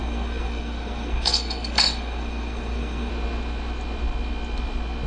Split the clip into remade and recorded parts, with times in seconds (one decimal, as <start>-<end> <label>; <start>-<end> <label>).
0.0-3.1 remade; 3.1-5.1 recorded